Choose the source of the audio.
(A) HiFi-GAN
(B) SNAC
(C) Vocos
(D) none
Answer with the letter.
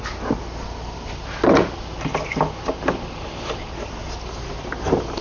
D